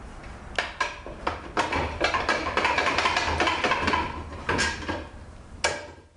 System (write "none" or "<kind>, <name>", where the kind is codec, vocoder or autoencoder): none